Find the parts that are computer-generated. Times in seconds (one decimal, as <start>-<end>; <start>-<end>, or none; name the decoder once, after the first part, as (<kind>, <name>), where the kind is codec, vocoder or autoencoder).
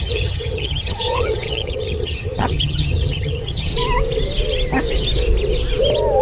0.0-3.7 (vocoder, HiFi-GAN)